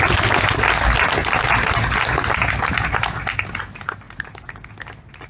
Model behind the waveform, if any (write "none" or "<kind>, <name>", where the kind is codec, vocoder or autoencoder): none